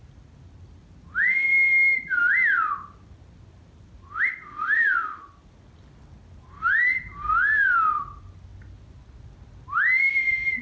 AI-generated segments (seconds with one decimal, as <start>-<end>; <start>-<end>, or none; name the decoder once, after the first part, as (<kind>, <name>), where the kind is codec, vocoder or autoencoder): none